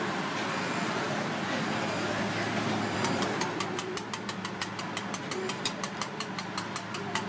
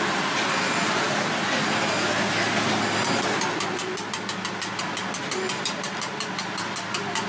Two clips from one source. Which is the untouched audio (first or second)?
second